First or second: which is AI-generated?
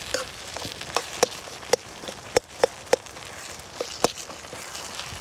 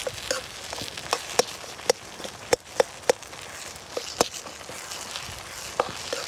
first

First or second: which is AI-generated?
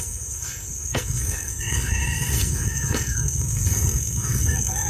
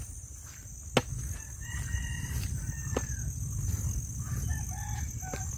first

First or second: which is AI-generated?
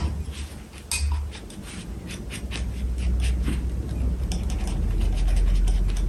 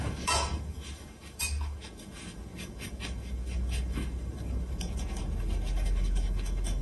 second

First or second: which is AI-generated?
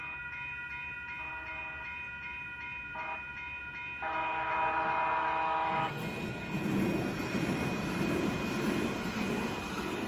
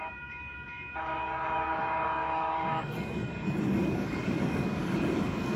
second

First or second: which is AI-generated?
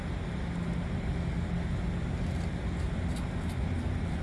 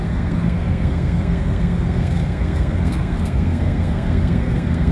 second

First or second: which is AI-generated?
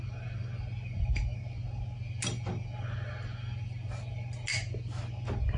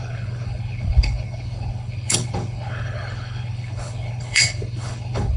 second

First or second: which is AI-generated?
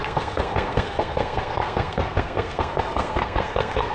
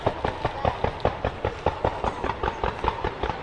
first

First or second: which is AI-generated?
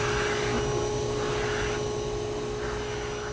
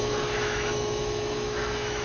second